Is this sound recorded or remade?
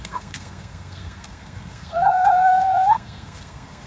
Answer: remade